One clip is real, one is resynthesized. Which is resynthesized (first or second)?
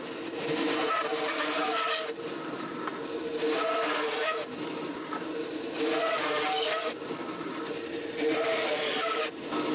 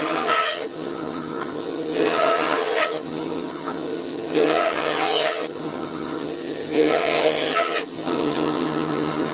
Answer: second